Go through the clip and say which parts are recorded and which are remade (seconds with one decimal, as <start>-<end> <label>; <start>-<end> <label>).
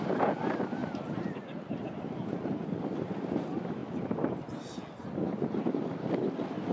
0.0-6.7 recorded